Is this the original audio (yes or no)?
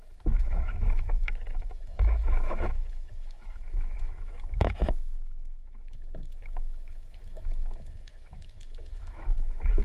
no